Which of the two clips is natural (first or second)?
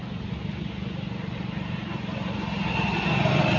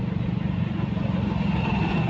first